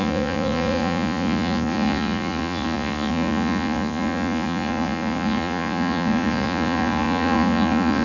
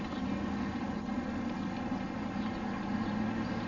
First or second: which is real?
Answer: second